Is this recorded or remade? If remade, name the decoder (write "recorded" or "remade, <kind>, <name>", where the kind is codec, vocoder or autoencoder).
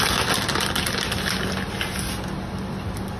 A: recorded